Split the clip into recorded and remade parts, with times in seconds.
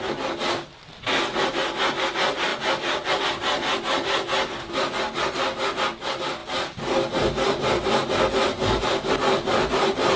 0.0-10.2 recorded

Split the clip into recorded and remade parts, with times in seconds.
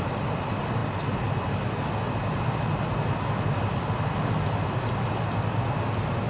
0.0-6.3 recorded